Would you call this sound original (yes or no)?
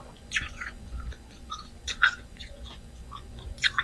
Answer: no